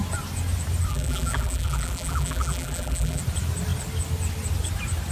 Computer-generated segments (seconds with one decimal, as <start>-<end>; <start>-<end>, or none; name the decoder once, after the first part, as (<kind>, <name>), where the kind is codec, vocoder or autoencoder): 0.9-3.2 (vocoder, BigVGAN v2)